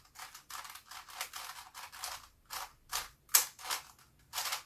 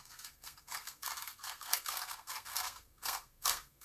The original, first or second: first